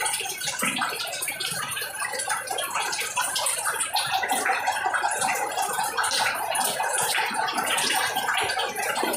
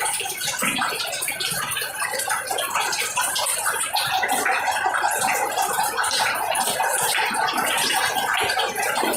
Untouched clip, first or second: second